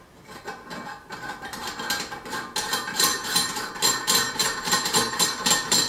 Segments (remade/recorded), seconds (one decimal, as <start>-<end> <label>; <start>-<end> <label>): 0.0-3.1 recorded; 3.1-3.7 remade; 3.7-4.4 recorded; 4.4-5.2 remade; 5.2-5.9 recorded